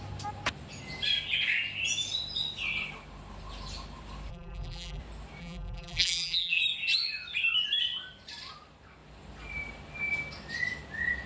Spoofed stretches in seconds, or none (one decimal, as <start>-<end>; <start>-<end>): 4.3-5.0; 5.4-6.6